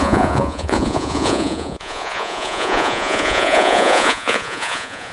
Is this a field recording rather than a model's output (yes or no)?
no